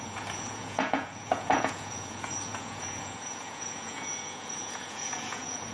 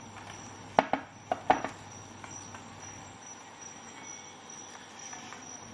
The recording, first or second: second